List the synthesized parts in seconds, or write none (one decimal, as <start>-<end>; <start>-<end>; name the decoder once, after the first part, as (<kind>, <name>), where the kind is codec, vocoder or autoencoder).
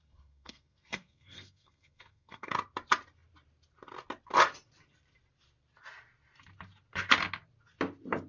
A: 0.0-2.5 (codec, SNAC)